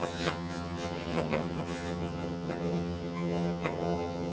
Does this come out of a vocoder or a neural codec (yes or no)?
yes